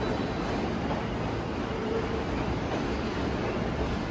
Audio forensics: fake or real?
real